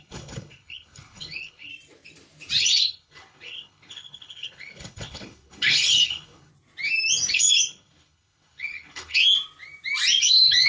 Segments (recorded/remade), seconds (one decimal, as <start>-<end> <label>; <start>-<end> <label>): 0.0-1.7 remade; 1.7-2.6 recorded; 2.6-6.5 remade; 6.5-7.3 recorded; 7.3-9.2 remade; 9.2-10.2 recorded; 10.2-10.7 remade